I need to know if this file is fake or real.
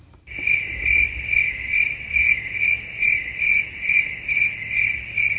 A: real